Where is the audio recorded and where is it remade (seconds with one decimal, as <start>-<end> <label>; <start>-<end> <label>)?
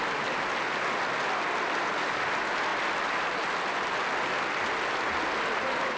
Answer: 0.0-6.0 recorded